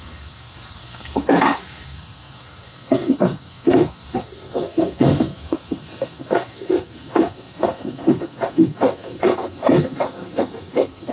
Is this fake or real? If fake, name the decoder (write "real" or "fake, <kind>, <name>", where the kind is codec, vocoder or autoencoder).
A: fake, codec, SNAC